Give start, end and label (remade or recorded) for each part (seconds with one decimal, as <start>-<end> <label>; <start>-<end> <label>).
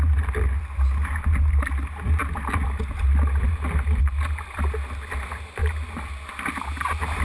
0.0-7.2 recorded